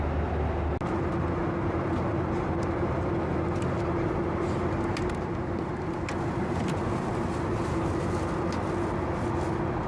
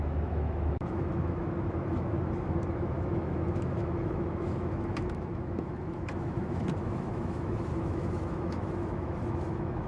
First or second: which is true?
first